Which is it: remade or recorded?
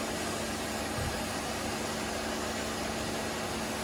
recorded